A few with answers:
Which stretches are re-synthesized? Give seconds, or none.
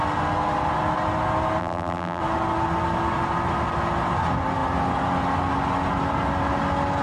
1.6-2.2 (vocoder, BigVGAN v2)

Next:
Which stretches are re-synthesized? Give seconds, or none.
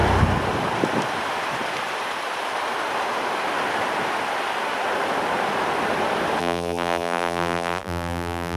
6.4-8.6 (vocoder, BigVGAN v2)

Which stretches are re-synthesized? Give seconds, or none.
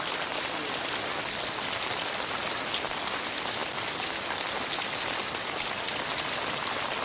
none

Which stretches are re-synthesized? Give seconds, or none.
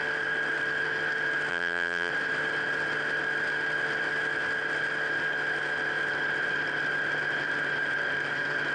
1.5-2.1 (vocoder, BigVGAN v2)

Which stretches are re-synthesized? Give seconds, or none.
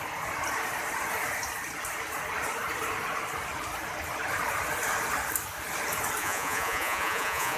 6.2-7.6 (vocoder, Vocos)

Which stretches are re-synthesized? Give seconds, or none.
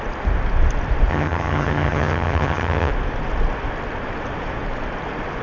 1.1-2.9 (vocoder, HiFi-GAN)